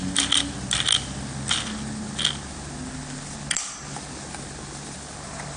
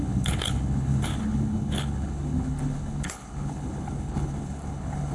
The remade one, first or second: second